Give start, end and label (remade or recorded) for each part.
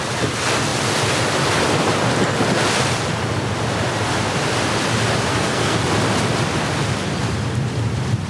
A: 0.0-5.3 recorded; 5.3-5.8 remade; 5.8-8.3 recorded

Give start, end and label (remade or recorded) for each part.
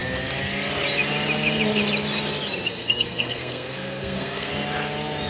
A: 0.0-2.7 recorded; 2.7-4.5 remade; 4.5-5.3 recorded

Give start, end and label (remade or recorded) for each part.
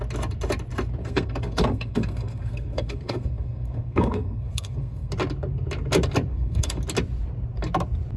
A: 0.0-1.0 recorded; 1.0-5.1 remade; 5.1-6.3 recorded; 6.3-6.8 remade; 6.8-8.2 recorded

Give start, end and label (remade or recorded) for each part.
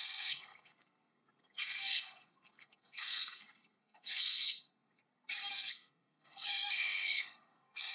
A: 0.0-5.0 remade; 5.0-5.5 recorded; 5.5-7.9 remade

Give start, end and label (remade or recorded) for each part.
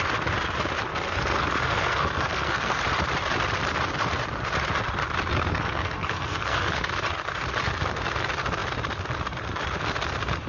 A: 0.0-0.9 recorded; 0.9-2.8 remade; 2.8-5.3 recorded; 5.3-6.9 remade; 6.9-10.5 recorded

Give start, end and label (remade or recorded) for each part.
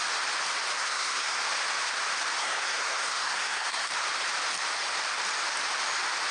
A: 0.0-0.8 recorded; 0.8-1.4 remade; 1.4-2.4 recorded; 2.4-3.9 remade; 3.9-6.3 recorded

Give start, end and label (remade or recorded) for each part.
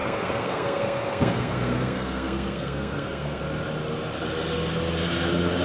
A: 0.0-3.4 remade; 3.4-5.6 recorded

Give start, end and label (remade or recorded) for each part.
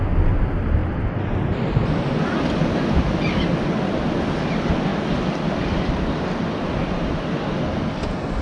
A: 0.0-8.4 recorded